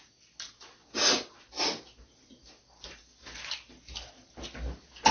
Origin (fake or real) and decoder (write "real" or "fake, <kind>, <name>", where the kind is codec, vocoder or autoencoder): real